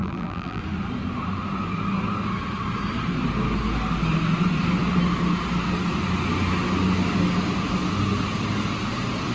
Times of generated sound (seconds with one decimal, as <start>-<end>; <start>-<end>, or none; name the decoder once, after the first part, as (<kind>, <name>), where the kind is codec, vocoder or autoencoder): 0.0-0.6 (vocoder, BigVGAN v2)